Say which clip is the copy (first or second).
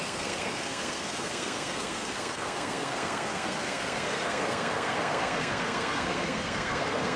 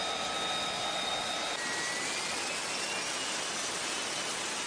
first